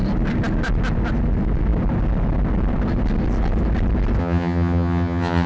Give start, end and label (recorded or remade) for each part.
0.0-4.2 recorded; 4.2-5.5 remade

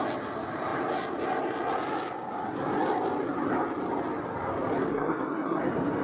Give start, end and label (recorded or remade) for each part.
0.0-4.9 recorded; 4.9-5.6 remade; 5.6-6.0 recorded

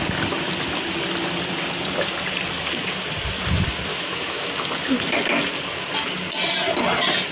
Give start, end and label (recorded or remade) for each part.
0.0-3.9 recorded; 3.9-4.5 remade; 4.5-7.3 recorded